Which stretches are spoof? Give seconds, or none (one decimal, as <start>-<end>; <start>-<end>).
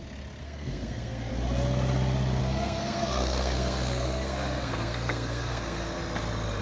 0.4-1.3; 2.4-6.0